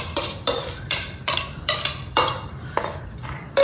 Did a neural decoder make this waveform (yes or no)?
yes